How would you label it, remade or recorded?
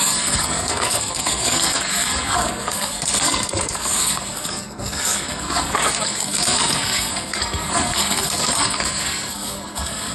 remade